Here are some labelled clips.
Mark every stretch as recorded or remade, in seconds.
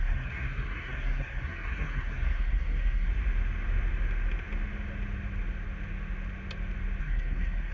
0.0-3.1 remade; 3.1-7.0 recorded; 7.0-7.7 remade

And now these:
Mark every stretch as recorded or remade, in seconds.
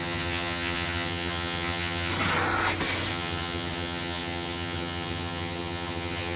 0.0-2.1 remade; 2.1-3.1 recorded; 3.1-6.4 remade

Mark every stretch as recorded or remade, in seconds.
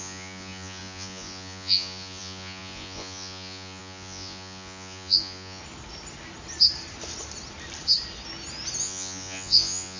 0.0-5.6 remade; 5.6-8.8 recorded; 8.8-10.0 remade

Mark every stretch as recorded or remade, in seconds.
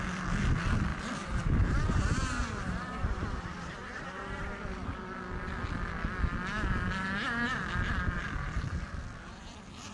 0.0-0.9 recorded; 0.9-4.0 remade; 4.0-7.5 recorded; 7.5-9.9 remade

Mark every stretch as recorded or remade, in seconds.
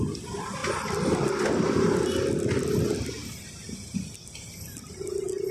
0.0-5.5 recorded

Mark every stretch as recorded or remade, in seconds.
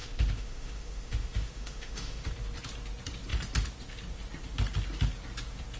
0.0-2.3 remade; 2.3-5.8 recorded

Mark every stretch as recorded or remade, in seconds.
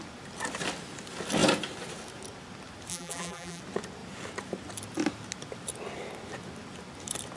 0.0-2.9 recorded; 2.9-3.6 remade; 3.6-7.4 recorded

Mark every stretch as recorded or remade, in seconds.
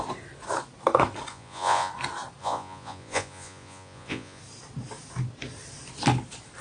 0.0-1.3 recorded; 1.3-1.9 remade; 1.9-2.4 recorded; 2.4-4.4 remade; 4.4-6.6 recorded